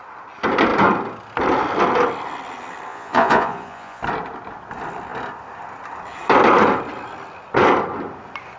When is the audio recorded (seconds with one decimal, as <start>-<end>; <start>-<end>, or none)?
0.0-2.9; 4.0-8.6